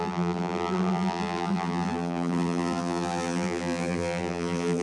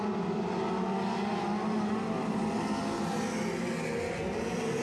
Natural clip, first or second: second